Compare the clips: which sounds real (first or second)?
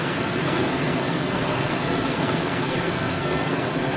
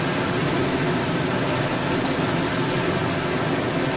second